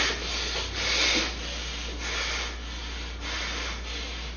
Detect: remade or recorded recorded